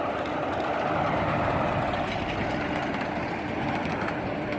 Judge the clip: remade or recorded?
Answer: recorded